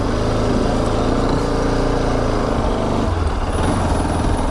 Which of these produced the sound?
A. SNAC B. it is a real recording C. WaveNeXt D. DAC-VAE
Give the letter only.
B